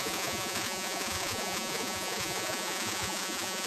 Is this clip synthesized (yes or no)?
yes